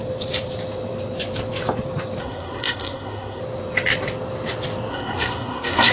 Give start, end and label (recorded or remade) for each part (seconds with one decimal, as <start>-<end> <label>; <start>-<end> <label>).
0.0-2.2 recorded; 2.2-3.4 remade; 3.4-4.9 recorded; 4.9-5.9 remade

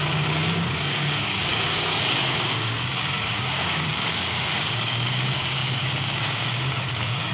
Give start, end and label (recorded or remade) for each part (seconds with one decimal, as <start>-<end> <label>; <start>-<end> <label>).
0.0-7.3 remade

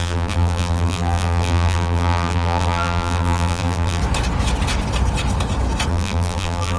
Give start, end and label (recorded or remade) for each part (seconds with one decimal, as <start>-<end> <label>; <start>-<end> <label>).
0.0-4.0 remade; 4.0-5.9 recorded; 5.9-6.8 remade